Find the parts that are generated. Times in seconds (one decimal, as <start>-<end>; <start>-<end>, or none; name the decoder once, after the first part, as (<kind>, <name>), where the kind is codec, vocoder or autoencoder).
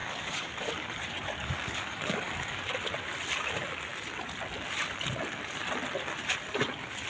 0.0-2.6 (codec, DAC)